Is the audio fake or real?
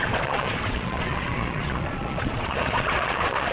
fake